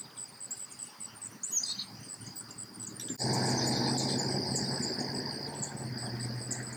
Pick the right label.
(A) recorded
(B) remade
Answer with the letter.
A